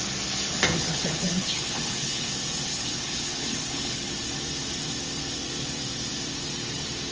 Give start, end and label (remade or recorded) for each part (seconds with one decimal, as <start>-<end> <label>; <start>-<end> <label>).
0.0-0.5 recorded; 0.5-2.3 remade; 2.3-2.7 recorded; 2.7-4.1 remade; 4.1-7.1 recorded